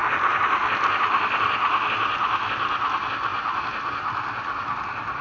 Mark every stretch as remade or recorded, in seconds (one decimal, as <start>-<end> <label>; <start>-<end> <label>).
0.0-3.3 recorded; 3.3-4.8 remade; 4.8-5.2 recorded